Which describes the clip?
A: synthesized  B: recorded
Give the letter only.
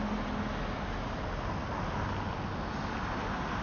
B